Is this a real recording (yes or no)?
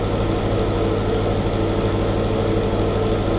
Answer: yes